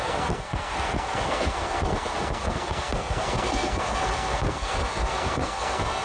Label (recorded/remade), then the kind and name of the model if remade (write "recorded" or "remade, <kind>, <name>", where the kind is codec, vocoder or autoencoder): remade, codec, SNAC